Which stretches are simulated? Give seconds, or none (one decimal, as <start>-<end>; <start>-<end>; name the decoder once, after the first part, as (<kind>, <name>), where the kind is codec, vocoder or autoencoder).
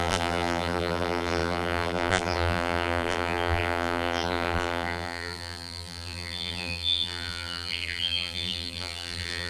0.0-9.5 (vocoder, BigVGAN v2)